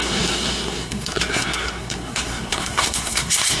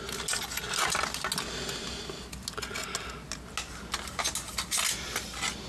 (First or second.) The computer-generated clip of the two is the first